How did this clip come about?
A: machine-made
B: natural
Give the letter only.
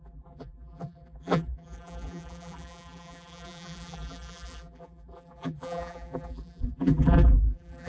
A